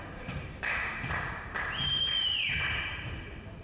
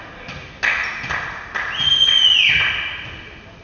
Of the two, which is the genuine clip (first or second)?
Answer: second